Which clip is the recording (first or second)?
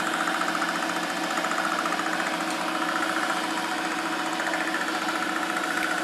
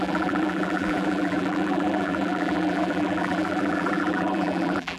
first